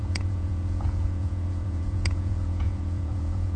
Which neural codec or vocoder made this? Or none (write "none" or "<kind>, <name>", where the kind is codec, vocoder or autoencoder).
vocoder, Vocos